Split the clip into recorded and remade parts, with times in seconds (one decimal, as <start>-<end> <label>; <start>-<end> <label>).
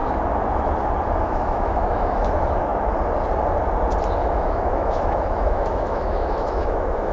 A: 0.0-1.2 recorded; 1.2-2.7 remade; 2.7-4.2 recorded; 4.2-7.1 remade